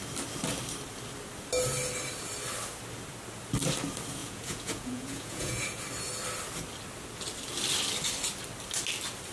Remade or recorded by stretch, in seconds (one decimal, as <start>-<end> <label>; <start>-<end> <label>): 0.0-4.2 recorded; 4.2-5.8 remade; 5.8-9.3 recorded